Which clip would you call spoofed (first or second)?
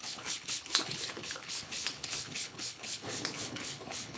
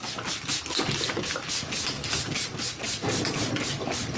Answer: first